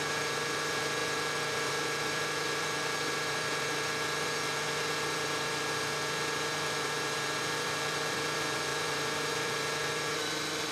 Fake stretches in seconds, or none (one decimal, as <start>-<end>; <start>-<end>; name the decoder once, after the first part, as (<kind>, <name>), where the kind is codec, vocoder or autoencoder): 0.0-10.7 (vocoder, BigVGAN v2)